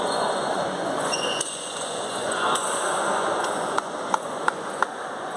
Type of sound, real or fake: fake